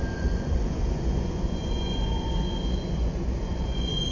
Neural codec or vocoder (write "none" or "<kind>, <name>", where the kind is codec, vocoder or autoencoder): vocoder, Vocos